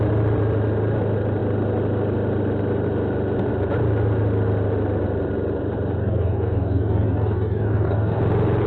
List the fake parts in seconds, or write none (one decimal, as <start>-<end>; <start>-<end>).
6.0-8.2